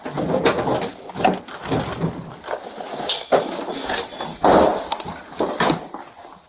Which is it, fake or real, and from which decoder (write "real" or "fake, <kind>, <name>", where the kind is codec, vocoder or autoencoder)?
real